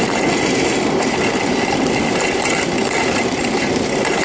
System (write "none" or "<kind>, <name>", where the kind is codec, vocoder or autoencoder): none